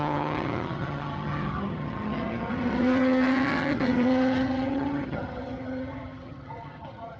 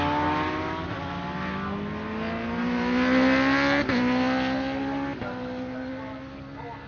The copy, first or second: first